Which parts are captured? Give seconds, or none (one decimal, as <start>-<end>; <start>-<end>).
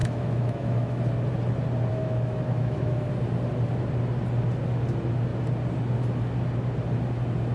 1.0-1.9; 3.1-7.5